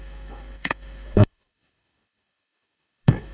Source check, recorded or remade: remade